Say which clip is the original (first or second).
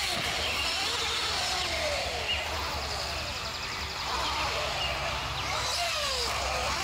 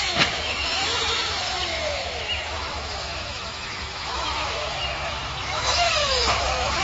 first